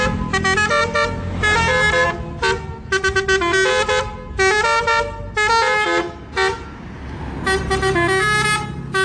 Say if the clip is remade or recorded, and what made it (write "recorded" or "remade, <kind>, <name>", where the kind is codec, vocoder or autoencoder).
recorded